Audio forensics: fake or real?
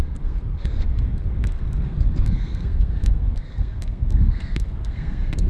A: fake